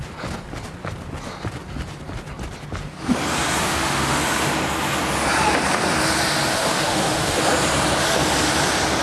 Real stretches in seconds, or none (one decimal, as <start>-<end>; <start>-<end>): 0.0-3.6; 4.2-6.5; 7.4-9.0